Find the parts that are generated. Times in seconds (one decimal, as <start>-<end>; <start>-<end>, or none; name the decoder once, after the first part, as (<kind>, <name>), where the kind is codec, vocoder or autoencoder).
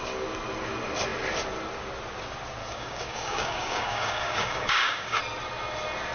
2.6-5.2 (codec, DAC)